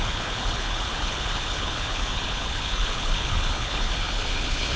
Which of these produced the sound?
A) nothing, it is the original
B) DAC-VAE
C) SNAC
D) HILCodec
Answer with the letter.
D